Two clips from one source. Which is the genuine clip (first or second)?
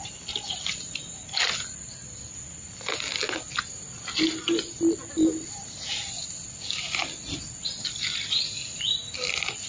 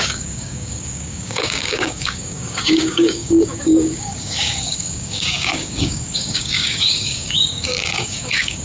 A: first